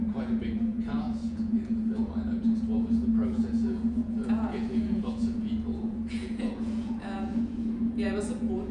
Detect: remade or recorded remade